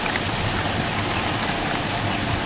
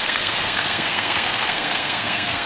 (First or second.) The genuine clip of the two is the first